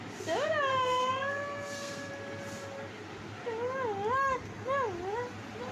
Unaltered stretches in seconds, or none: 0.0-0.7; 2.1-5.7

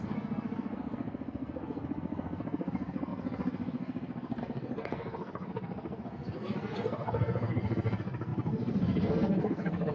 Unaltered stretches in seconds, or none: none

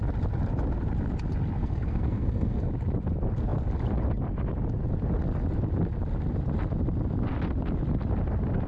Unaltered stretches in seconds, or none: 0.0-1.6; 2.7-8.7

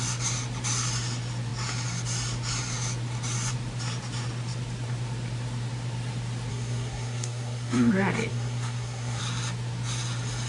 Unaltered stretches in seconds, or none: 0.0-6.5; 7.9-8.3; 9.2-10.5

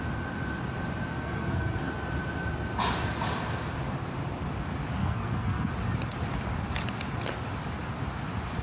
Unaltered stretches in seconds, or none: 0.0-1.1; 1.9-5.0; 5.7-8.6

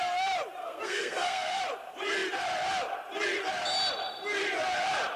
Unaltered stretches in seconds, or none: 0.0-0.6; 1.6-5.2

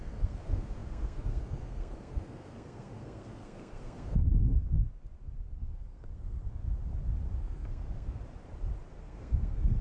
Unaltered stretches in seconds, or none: 4.9-5.6; 6.6-7.4; 8.2-9.0